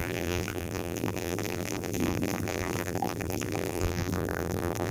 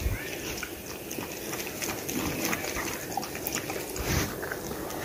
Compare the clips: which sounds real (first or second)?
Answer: second